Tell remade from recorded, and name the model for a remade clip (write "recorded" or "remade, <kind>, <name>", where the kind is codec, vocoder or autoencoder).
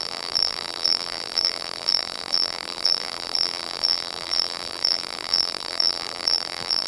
remade, vocoder, BigVGAN v2